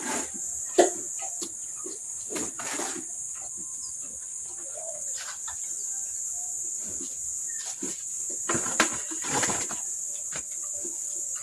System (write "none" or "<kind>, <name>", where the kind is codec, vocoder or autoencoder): none